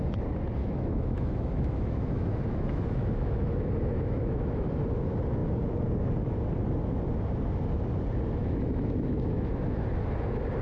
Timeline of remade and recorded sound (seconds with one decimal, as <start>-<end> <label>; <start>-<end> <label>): 0.0-0.6 recorded; 0.6-4.7 remade; 4.7-8.4 recorded; 8.4-9.5 remade; 9.5-10.6 recorded